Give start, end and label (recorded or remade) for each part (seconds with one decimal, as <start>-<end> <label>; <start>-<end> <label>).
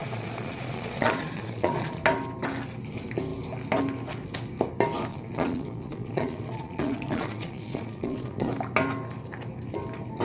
0.0-2.0 remade; 2.0-5.1 recorded; 5.1-8.5 remade; 8.5-10.2 recorded